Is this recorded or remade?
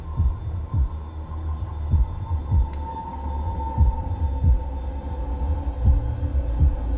recorded